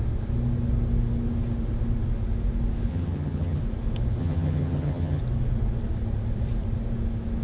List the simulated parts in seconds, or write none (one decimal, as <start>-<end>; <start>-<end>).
2.9-3.6; 4.2-5.2